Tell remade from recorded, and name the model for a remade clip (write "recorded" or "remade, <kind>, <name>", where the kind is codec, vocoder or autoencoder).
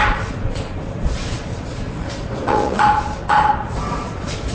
remade, vocoder, Vocos